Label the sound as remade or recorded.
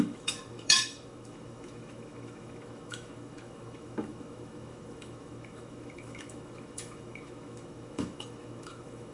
remade